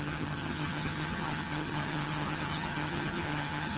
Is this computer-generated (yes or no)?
yes